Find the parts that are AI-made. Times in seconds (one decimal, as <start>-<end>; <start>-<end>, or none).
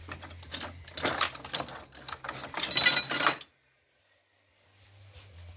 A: none